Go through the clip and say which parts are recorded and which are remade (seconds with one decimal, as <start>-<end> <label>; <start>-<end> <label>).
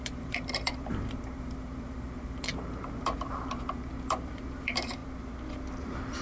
0.0-5.0 remade; 5.0-5.8 recorded; 5.8-6.2 remade